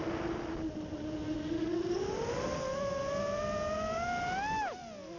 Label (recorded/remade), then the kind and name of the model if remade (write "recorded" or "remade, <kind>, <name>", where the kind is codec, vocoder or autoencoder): recorded